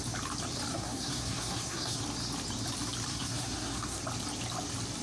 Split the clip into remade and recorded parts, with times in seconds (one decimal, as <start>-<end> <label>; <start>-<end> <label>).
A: 0.0-0.7 recorded; 0.7-2.0 remade; 2.0-3.1 recorded; 3.1-4.0 remade; 4.0-5.0 recorded